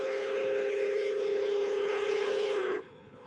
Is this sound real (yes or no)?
no